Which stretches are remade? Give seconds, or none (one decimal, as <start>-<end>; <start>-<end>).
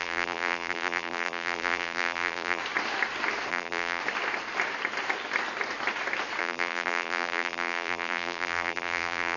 0.0-2.6; 3.5-4.0; 6.4-9.4